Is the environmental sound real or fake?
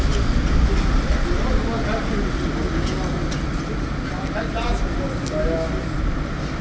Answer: real